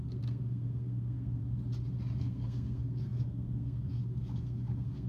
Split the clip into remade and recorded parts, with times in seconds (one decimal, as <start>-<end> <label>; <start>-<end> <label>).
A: 0.0-1.4 remade; 1.4-2.2 recorded; 2.2-5.1 remade